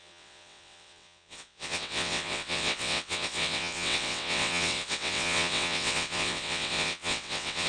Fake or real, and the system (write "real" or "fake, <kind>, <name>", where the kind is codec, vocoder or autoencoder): fake, vocoder, WaveNeXt